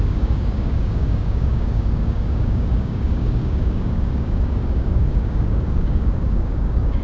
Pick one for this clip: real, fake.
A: fake